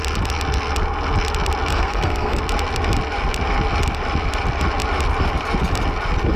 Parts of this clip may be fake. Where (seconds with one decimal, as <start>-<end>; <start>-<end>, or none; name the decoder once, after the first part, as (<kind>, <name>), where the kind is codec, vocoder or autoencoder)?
1.7-2.4 (codec, SNAC)